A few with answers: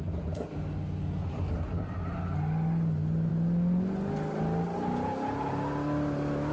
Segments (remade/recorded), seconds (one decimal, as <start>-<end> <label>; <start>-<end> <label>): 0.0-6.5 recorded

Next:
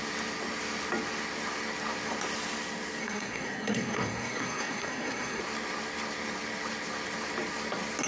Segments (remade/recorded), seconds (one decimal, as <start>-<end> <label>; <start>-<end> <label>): 0.0-3.0 recorded; 3.0-5.4 remade; 5.4-8.1 recorded

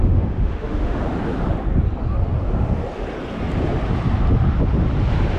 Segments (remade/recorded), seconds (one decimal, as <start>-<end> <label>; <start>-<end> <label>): 0.0-1.0 remade; 1.0-5.4 recorded